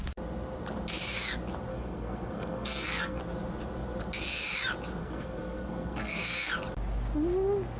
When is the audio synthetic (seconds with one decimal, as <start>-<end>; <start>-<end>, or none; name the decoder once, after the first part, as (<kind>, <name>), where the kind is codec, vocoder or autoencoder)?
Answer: 1.7-3.2 (codec, SNAC); 5.0-6.5